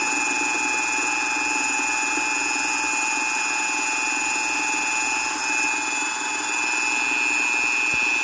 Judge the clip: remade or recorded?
recorded